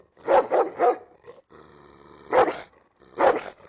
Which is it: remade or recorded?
recorded